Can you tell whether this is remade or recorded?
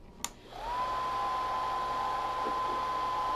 recorded